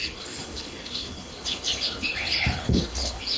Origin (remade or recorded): remade